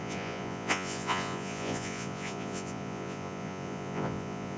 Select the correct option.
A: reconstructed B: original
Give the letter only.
A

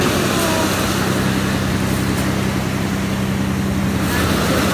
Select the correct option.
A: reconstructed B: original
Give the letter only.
B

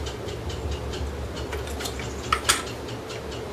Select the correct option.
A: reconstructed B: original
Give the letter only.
B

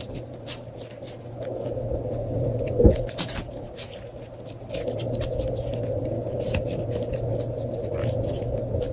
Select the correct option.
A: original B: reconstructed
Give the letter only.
A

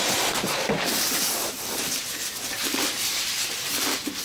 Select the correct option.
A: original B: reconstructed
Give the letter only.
B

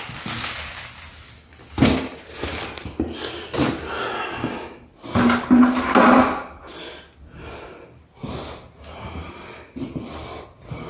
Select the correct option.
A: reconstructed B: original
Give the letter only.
B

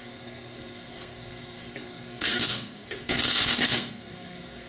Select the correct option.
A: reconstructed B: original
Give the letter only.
A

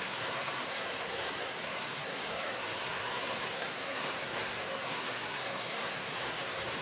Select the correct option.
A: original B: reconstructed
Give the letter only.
B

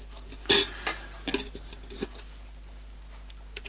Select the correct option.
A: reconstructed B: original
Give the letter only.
B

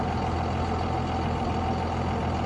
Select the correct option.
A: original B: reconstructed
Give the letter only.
A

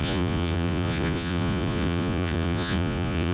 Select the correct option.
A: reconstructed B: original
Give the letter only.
A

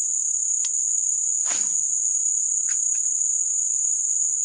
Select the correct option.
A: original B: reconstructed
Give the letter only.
A